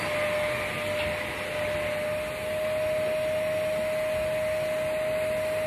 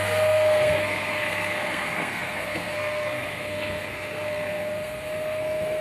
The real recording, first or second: first